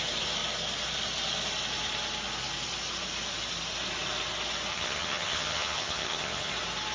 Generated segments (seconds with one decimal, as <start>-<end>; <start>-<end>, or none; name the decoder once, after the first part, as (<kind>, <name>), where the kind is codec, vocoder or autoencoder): 4.7-6.5 (vocoder, HiFi-GAN)